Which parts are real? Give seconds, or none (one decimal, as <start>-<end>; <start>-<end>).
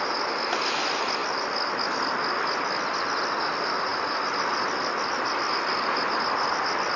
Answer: 0.0-7.0